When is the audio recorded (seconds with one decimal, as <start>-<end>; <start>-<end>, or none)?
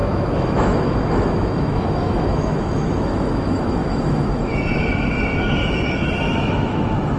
none